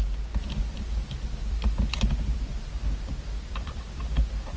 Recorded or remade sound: recorded